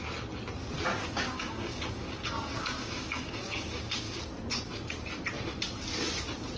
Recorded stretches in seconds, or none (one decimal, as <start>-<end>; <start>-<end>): 0.0-1.0; 4.2-6.6